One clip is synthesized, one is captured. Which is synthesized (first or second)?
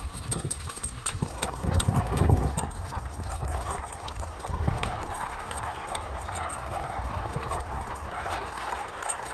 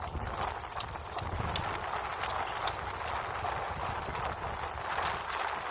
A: first